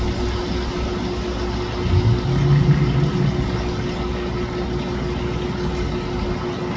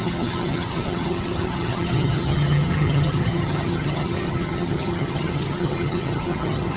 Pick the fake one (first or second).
second